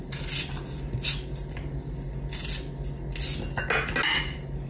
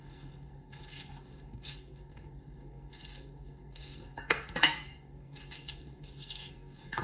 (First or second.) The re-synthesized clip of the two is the second